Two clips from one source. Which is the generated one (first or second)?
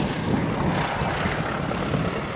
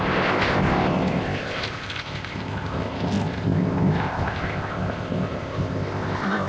second